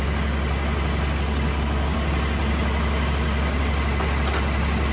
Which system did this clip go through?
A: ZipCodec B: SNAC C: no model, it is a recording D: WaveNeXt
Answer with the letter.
C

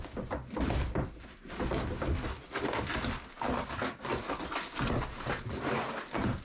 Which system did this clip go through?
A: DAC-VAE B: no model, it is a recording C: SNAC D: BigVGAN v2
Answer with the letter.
B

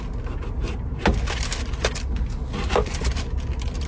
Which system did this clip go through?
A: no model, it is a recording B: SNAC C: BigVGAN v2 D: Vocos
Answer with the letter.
A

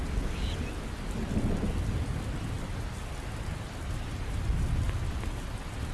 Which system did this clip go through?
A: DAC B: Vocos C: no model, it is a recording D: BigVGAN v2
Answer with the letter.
C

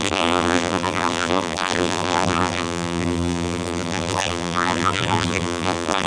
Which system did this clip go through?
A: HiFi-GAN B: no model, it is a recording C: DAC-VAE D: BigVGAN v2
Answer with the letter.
D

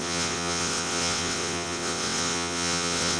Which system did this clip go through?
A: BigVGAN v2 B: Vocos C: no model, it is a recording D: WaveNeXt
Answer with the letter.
D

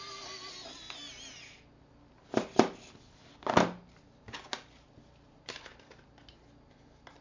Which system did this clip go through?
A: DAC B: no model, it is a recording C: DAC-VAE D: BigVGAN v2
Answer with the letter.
B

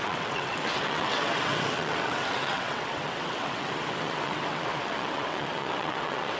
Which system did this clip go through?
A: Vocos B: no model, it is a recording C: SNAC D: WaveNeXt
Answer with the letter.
D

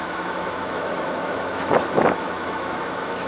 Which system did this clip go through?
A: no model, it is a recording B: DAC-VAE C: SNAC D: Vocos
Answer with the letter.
B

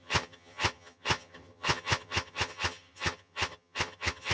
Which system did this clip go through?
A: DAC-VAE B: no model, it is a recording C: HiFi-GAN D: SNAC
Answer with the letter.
C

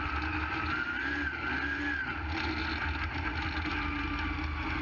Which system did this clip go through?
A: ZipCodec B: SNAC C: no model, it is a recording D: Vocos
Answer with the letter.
C